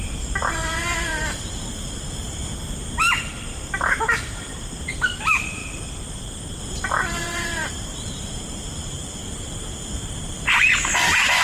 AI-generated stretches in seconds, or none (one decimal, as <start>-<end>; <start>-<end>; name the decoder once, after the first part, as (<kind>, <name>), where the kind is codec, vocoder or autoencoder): 0.0-2.4 (vocoder, BigVGAN v2); 3.1-5.6; 7.1-11.4